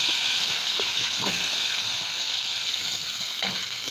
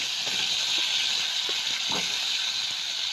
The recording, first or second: second